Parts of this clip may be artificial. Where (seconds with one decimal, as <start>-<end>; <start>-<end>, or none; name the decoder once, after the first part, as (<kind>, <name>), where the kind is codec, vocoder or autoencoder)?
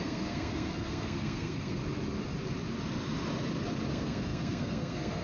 0.0-1.8 (codec, SNAC); 3.9-5.2